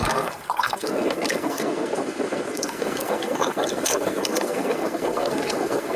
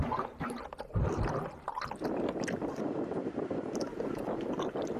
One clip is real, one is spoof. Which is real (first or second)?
second